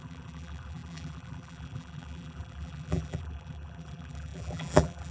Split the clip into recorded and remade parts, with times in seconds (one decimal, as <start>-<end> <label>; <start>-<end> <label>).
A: 0.0-5.1 remade